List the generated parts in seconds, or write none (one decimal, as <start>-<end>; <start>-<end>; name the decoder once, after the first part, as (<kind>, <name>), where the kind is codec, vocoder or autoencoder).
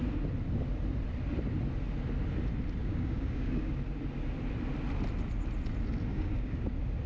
2.8-3.7 (codec, DAC); 6.1-6.6